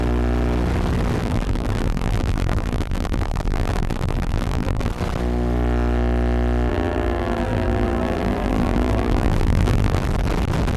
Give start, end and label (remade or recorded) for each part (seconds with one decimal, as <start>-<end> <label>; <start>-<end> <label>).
0.0-1.2 recorded; 1.2-4.9 remade; 4.9-6.7 recorded; 6.7-10.0 remade; 10.0-10.8 recorded